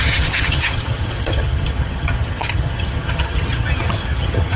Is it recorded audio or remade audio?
remade